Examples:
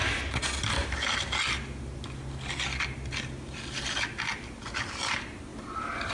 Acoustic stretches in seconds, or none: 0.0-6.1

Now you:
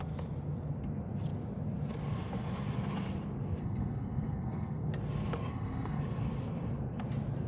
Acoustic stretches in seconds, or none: 0.0-3.6; 4.9-5.5; 6.0-7.5

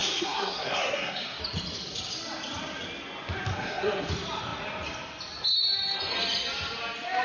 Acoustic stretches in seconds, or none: 1.4-3.5; 4.1-7.2

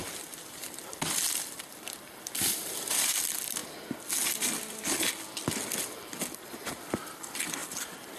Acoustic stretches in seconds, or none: 0.0-8.2